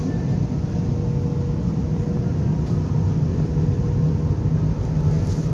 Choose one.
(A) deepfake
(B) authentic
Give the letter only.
B